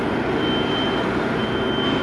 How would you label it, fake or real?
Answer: real